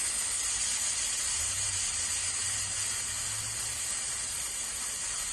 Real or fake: real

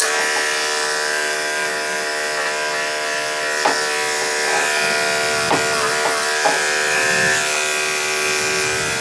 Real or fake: real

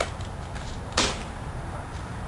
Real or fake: fake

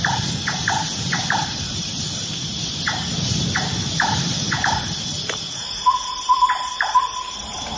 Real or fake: real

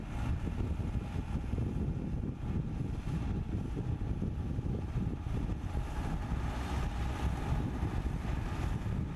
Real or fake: real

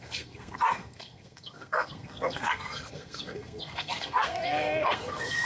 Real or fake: fake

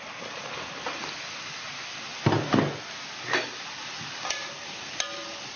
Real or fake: real